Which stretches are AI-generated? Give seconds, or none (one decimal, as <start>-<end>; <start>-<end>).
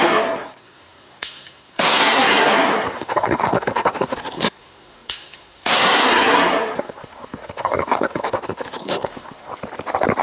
0.0-9.5